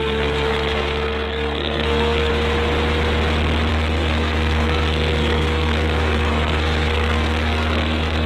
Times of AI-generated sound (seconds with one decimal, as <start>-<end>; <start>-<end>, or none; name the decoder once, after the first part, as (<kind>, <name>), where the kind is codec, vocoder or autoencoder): 0.0-2.3 (codec, SNAC); 3.7-8.3